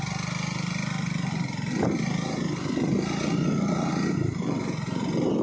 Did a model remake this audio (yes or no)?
no